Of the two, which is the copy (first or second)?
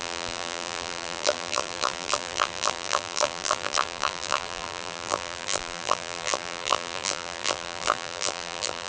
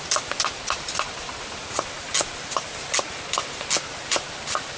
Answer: first